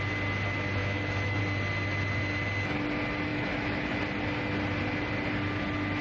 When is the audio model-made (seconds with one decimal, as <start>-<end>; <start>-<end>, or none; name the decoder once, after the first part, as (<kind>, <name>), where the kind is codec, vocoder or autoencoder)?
0.8-1.4 (autoencoder, DAC-VAE); 3.3-4.0